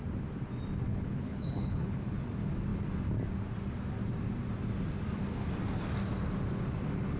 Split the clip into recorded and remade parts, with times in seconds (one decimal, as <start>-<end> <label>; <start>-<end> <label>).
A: 0.0-0.9 recorded; 0.9-2.2 remade; 2.2-7.2 recorded